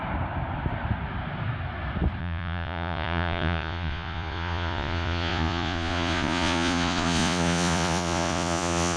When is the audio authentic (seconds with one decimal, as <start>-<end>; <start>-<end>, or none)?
0.0-2.2